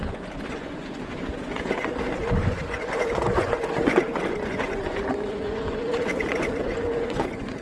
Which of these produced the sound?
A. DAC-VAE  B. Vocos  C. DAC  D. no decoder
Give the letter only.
B